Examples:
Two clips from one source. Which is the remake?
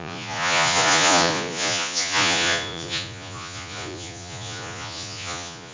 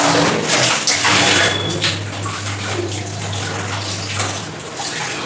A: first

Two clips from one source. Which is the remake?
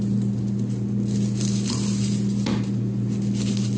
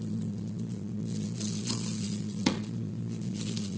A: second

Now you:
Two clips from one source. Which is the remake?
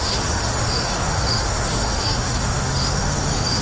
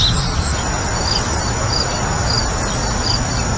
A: first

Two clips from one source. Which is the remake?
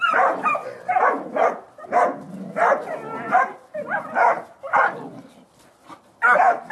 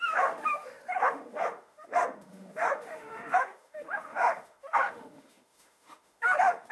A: second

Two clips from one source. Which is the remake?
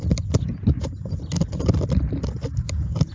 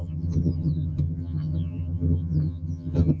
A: second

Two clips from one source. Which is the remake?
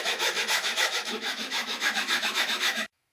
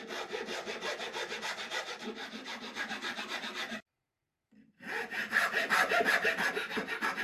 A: first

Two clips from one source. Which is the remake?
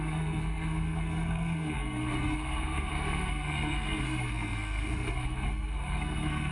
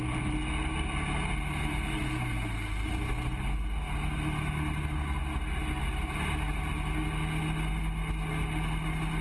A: first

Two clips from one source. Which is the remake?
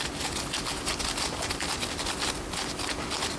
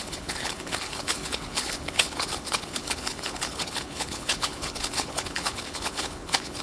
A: second